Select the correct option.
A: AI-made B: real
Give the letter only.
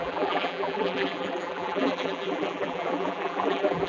A